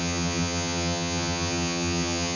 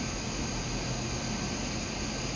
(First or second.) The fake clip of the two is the first